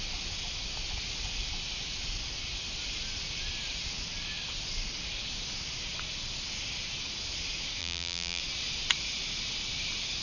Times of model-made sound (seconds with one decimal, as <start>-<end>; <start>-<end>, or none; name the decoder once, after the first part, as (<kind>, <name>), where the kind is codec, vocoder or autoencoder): 7.8-8.4 (vocoder, BigVGAN v2)